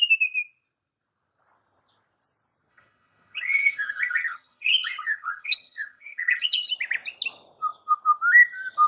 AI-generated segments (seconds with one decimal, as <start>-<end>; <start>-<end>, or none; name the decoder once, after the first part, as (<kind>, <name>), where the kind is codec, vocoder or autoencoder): 2.7-6.7 (vocoder, HiFi-GAN)